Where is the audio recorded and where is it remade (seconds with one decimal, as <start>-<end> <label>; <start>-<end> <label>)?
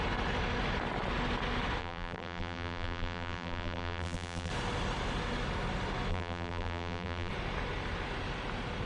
0.0-1.8 recorded; 1.8-4.5 remade; 4.5-6.1 recorded; 6.1-7.3 remade; 7.3-8.9 recorded